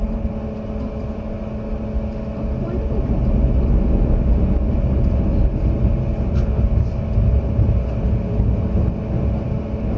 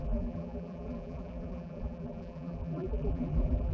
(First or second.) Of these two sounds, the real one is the first